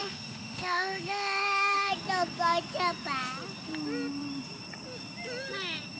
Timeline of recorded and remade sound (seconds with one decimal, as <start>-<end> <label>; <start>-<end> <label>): 0.0-1.9 remade; 1.9-6.0 recorded